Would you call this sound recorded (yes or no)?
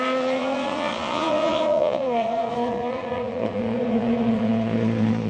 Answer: no